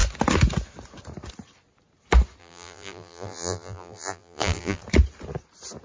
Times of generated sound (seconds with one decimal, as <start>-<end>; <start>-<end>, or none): 2.4-4.8